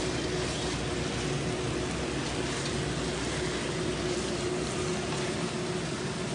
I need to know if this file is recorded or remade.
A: recorded